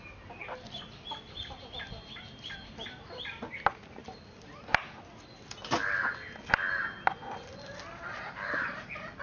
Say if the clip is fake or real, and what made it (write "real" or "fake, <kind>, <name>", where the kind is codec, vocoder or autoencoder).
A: real